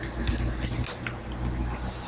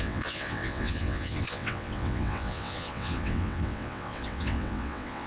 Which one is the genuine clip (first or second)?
first